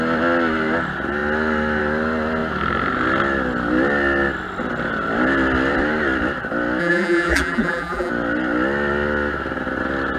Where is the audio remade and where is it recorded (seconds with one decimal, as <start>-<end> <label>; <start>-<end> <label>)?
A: 0.0-6.8 recorded; 6.8-8.1 remade; 8.1-10.2 recorded